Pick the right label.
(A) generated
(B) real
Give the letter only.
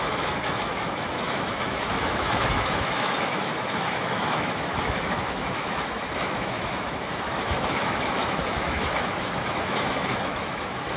A